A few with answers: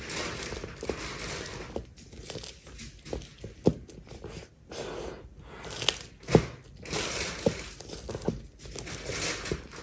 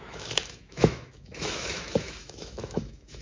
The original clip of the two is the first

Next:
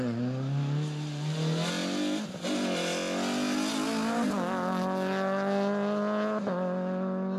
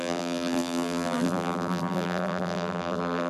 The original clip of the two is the first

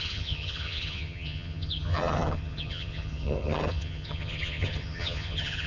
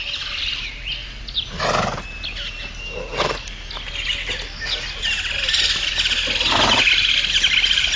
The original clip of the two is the second